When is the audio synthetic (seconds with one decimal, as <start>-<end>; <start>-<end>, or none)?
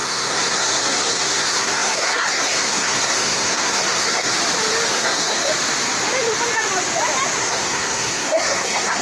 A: 0.0-4.3; 4.9-5.5; 7.4-9.0